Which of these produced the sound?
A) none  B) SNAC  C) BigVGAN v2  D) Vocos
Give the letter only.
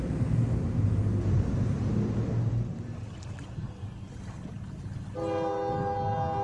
A